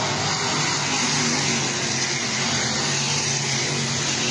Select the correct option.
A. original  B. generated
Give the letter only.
A